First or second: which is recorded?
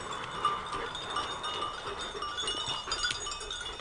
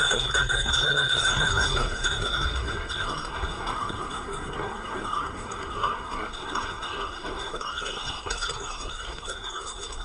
first